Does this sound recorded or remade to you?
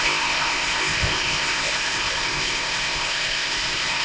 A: remade